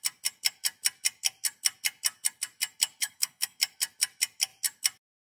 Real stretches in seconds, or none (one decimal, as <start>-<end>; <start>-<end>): 0.0-3.0; 3.6-5.4